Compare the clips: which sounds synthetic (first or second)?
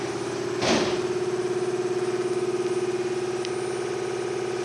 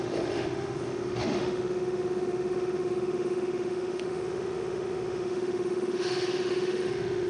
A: second